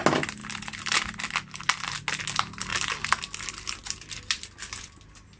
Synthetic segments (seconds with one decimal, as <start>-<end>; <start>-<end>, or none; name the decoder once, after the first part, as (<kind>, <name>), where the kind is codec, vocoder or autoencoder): none